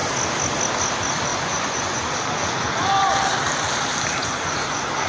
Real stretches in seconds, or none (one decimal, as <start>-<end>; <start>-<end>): 0.0-1.3; 2.0-2.4; 3.1-4.2